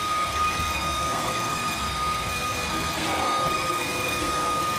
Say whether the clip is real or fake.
fake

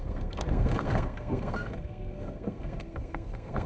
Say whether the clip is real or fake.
fake